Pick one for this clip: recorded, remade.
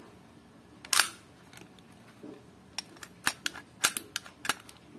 recorded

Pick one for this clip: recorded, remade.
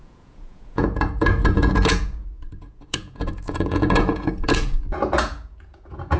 remade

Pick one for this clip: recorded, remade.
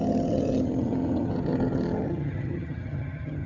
remade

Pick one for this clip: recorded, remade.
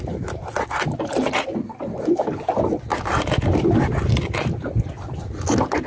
recorded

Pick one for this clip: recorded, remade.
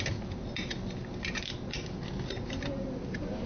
recorded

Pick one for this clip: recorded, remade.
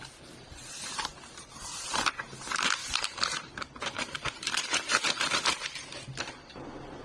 remade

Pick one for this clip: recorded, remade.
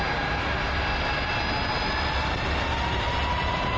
recorded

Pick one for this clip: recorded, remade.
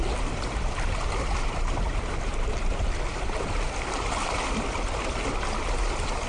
recorded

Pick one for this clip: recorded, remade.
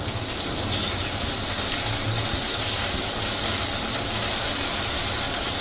recorded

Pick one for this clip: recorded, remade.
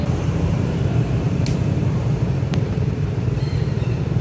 remade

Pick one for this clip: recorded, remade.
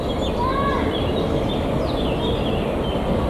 recorded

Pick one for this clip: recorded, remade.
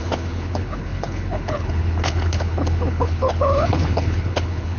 remade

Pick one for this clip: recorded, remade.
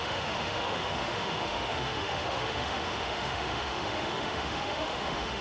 remade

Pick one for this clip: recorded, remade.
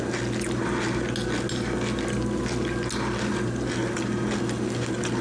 recorded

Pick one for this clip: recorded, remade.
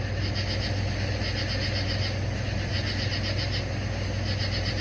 recorded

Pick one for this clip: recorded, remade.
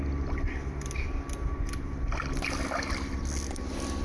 recorded